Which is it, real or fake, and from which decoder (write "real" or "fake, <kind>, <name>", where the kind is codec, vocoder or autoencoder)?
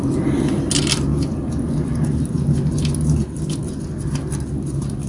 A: real